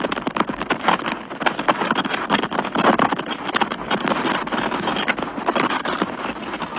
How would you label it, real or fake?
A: real